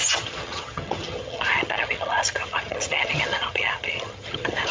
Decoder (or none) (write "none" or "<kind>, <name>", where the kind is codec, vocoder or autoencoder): vocoder, HiFi-GAN